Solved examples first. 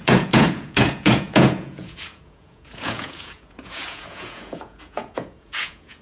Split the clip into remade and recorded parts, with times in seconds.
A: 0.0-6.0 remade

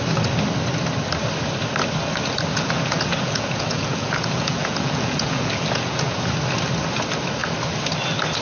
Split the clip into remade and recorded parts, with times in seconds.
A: 0.0-2.5 recorded; 2.5-6.3 remade; 6.3-8.4 recorded

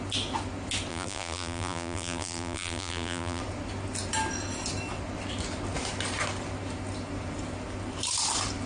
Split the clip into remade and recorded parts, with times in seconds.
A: 0.0-0.9 recorded; 0.9-3.4 remade; 3.4-8.7 recorded

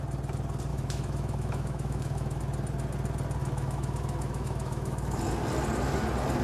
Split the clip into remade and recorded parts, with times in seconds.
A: 0.0-0.7 recorded; 0.7-2.4 remade; 2.4-3.4 recorded; 3.4-5.2 remade; 5.2-6.4 recorded

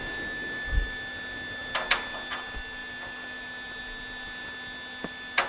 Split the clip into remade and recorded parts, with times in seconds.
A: 0.0-5.5 recorded